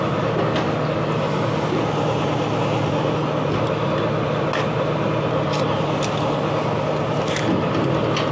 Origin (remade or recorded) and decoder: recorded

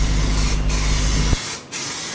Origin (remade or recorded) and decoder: recorded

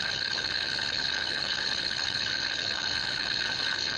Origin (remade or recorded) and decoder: remade, codec, HILCodec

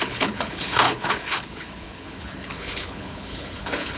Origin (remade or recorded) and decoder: remade, codec, HILCodec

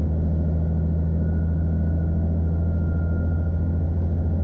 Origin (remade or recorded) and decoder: recorded